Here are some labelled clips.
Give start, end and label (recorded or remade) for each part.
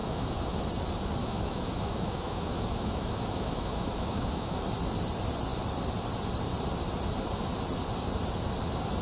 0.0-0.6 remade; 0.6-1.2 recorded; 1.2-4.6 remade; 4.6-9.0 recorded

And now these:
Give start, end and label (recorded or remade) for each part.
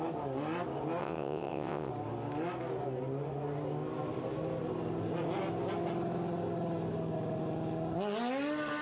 0.0-1.0 recorded; 1.0-1.9 remade; 1.9-8.8 recorded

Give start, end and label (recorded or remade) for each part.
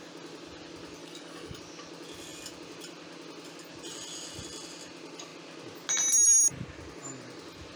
0.0-1.0 recorded; 1.0-1.6 remade; 1.6-7.8 recorded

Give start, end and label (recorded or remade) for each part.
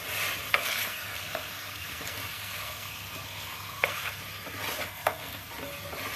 0.0-0.5 recorded; 0.5-4.2 remade; 4.2-4.9 recorded; 4.9-5.5 remade; 5.5-6.2 recorded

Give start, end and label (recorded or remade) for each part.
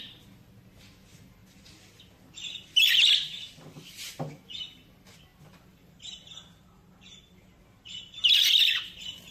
0.0-9.3 recorded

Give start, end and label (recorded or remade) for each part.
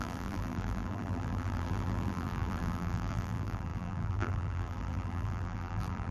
0.0-6.1 remade